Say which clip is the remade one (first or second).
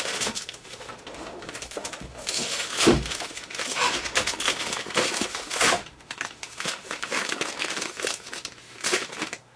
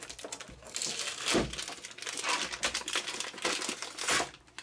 first